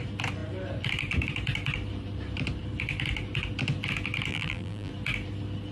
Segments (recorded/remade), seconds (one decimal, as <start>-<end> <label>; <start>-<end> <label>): 0.0-4.3 recorded; 4.3-4.9 remade; 4.9-5.7 recorded

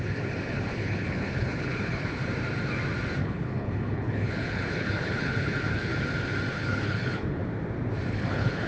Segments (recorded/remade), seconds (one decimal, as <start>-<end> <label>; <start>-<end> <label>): 0.0-2.2 remade; 2.2-3.2 recorded; 3.2-5.9 remade; 5.9-6.5 recorded; 6.5-7.4 remade; 7.4-8.1 recorded; 8.1-8.7 remade

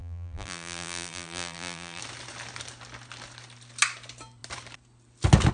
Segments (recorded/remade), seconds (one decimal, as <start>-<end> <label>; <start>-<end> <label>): 0.0-2.0 remade; 2.0-5.5 recorded

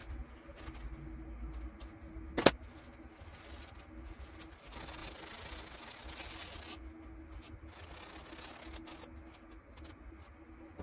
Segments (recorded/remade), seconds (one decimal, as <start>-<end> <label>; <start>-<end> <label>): 0.0-10.8 recorded

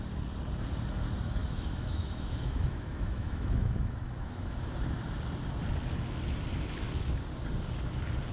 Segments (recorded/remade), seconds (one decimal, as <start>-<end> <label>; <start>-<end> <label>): 0.0-1.4 recorded; 1.4-4.7 remade; 4.7-8.3 recorded

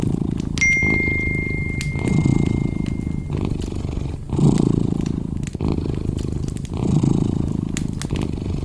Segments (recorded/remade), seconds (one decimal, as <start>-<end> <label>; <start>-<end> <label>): 0.0-8.6 recorded

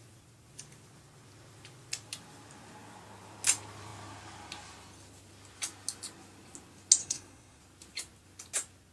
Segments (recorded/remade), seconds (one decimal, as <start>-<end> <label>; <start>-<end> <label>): 0.0-7.0 recorded; 7.0-7.6 remade; 7.6-8.9 recorded

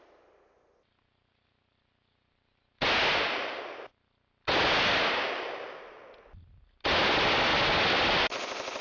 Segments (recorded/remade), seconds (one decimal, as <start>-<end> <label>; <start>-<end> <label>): 0.0-8.8 recorded